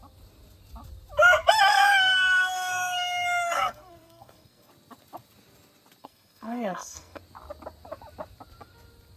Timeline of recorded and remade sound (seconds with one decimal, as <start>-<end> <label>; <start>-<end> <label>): 0.0-1.7 recorded; 1.7-4.7 remade; 4.7-6.0 recorded; 6.0-7.2 remade; 7.2-9.2 recorded